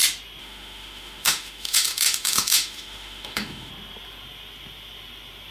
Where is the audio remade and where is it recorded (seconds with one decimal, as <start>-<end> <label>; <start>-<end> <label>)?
0.0-0.4 recorded; 0.4-3.7 remade; 3.7-5.5 recorded